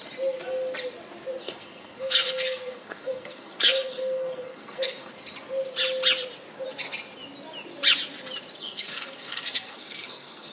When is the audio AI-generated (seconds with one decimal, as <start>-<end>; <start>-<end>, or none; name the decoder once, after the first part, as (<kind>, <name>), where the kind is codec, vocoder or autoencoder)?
1.4-5.1 (codec, SNAC); 8.6-10.5